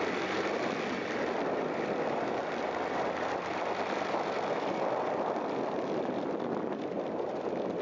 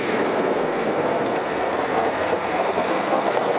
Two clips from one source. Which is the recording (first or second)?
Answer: first